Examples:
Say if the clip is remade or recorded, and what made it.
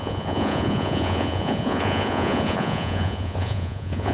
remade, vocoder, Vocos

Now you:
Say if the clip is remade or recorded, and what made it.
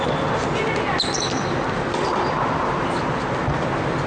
recorded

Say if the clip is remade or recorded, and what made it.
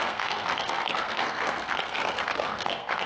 remade, codec, SNAC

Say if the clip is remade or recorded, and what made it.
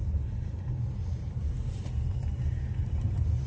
recorded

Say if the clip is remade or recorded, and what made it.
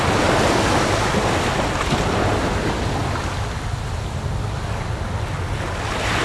recorded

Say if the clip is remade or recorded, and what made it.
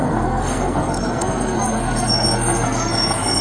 remade, codec, SNAC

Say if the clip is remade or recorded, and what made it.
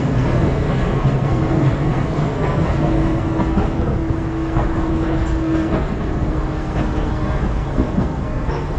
remade, codec, SNAC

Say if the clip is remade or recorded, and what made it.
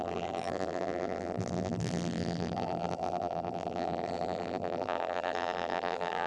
remade, vocoder, BigVGAN v2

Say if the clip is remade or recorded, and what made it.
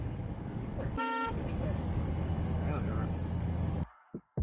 remade, codec, DAC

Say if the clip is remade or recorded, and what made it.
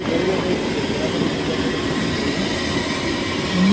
recorded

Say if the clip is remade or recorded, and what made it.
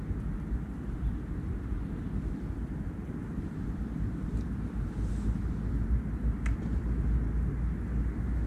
recorded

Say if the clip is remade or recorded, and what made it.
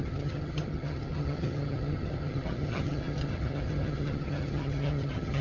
remade, vocoder, HiFi-GAN